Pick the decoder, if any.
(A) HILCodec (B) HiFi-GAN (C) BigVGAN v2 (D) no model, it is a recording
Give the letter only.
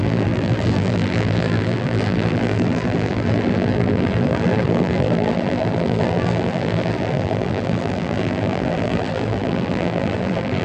C